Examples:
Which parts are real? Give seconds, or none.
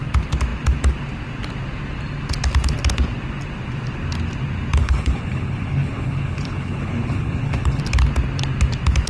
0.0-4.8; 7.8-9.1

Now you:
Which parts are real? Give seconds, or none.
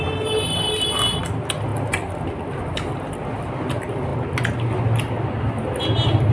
0.0-6.3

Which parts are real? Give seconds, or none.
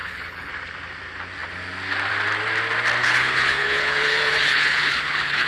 0.5-3.0